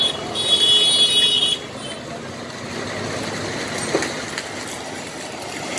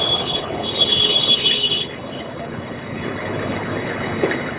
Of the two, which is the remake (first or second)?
second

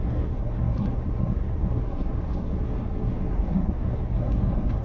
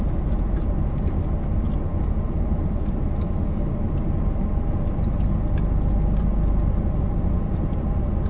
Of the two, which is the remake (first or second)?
first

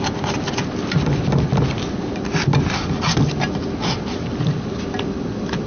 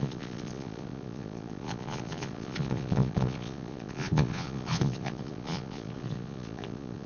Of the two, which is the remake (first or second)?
second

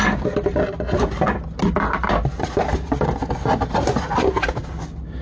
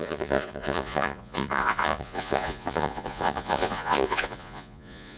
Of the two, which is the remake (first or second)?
second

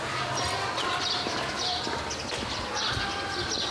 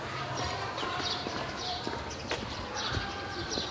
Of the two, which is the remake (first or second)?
second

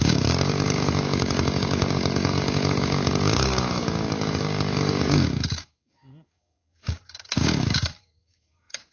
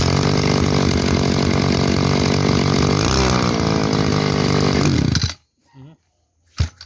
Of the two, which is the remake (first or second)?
first